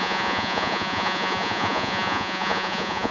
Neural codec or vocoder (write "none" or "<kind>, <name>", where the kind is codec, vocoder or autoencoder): vocoder, Vocos